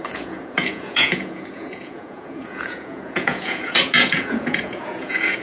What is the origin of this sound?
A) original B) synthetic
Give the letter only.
B